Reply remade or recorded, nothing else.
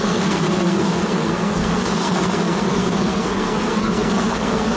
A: remade